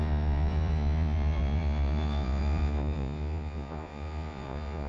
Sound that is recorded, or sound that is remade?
remade